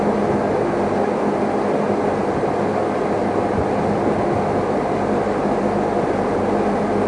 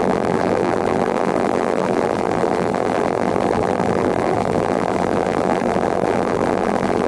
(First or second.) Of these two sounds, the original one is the first